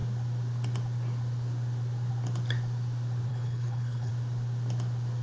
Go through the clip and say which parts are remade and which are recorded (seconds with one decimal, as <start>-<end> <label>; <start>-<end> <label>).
0.0-3.3 recorded; 3.3-4.1 remade; 4.1-5.2 recorded